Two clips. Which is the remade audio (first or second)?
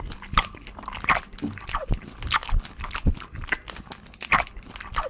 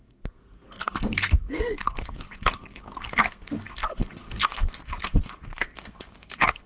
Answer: second